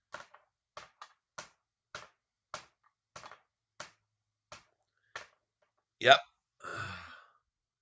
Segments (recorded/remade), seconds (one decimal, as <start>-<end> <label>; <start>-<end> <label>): 0.0-7.8 recorded